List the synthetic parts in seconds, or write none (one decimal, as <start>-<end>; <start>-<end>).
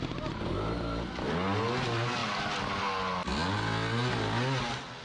none